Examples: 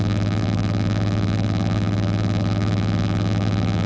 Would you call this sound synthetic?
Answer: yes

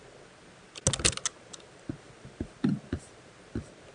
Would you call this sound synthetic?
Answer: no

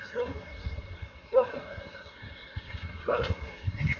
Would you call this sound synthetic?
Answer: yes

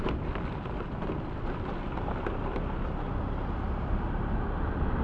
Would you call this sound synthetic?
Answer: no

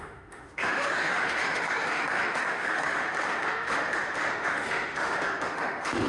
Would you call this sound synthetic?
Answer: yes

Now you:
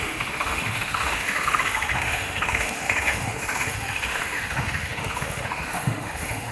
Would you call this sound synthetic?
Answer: yes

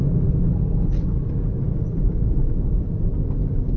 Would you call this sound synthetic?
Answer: no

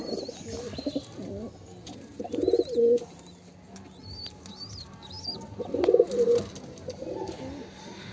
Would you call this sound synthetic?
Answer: no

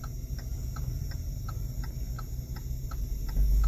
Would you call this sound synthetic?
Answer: no